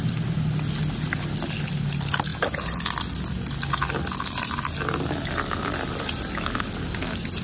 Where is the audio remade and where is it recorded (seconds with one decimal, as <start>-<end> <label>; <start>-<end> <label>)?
0.0-7.4 recorded